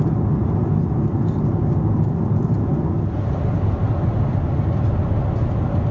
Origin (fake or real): real